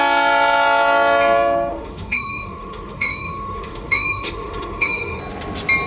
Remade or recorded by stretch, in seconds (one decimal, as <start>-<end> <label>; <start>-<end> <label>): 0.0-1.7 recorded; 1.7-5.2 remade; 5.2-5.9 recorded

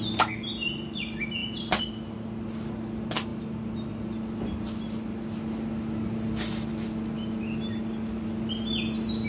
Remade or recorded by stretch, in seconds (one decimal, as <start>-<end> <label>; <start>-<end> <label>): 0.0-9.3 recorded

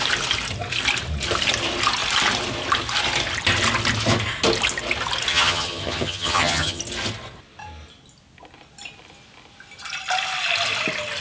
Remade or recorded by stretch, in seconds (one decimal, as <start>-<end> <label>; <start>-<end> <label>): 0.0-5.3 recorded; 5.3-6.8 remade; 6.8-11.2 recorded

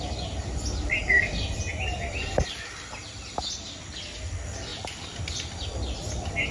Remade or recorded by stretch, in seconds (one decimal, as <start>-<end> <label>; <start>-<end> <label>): 0.0-1.0 recorded; 1.0-1.6 remade; 1.6-6.5 recorded

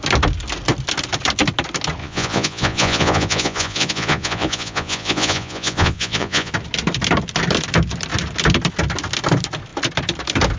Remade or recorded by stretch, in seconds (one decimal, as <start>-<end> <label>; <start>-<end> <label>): 0.0-2.0 recorded; 2.0-6.5 remade; 6.5-10.6 recorded

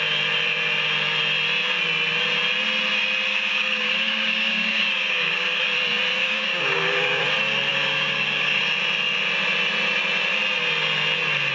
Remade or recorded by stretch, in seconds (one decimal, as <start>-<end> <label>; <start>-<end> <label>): 0.0-3.3 recorded; 3.3-5.6 remade; 5.6-6.2 recorded; 6.2-7.2 remade; 7.2-7.7 recorded; 7.7-8.6 remade; 8.6-11.5 recorded

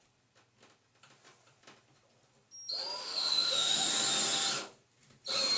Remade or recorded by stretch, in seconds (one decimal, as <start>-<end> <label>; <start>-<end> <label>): 0.0-3.0 recorded; 3.0-3.9 remade; 3.9-5.6 recorded